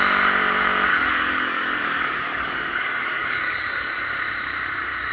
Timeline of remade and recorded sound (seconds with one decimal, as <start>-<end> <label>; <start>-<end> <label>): 0.0-0.9 recorded; 0.9-4.0 remade; 4.0-5.1 recorded